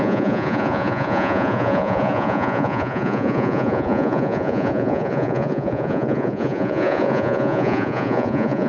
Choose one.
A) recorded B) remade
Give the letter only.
B